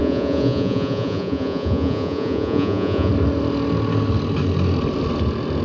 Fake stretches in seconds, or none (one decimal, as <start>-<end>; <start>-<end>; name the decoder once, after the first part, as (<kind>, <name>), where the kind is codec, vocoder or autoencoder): 0.0-3.1 (vocoder, Vocos)

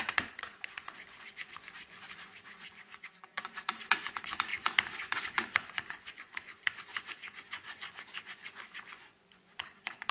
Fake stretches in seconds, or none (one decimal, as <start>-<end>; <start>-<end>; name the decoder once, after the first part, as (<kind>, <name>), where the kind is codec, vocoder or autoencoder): 0.0-10.1 (vocoder, Vocos)

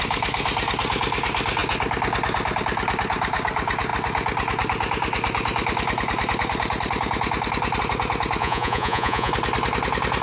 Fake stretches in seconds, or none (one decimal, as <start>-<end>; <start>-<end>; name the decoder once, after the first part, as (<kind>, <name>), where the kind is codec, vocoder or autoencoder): 8.4-9.3 (vocoder, Vocos)